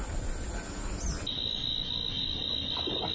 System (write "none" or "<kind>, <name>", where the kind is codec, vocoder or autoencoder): none